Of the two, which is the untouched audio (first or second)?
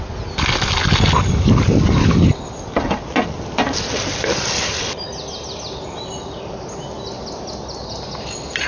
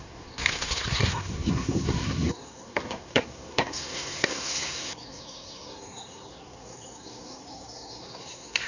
first